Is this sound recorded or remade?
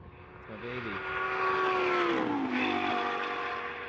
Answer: recorded